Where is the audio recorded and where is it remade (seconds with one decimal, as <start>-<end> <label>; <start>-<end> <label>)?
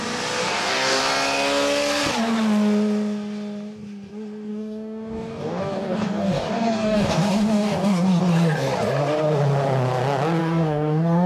0.0-0.4 recorded; 0.4-1.0 remade; 1.0-4.5 recorded; 4.5-8.2 remade; 8.2-10.4 recorded; 10.4-11.3 remade